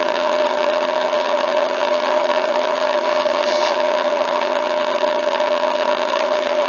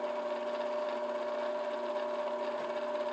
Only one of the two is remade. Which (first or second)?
first